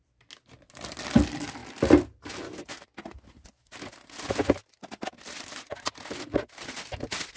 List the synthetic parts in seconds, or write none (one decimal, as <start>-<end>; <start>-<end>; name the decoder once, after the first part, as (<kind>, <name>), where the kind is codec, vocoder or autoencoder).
none